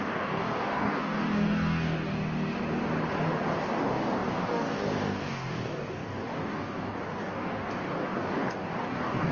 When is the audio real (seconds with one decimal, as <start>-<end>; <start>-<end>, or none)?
2.6-3.6